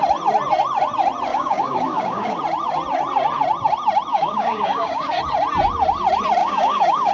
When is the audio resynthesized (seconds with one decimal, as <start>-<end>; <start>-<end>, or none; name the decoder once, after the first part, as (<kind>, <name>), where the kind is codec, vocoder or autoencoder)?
1.3-2.4 (codec, DAC); 4.1-5.2; 6.4-7.1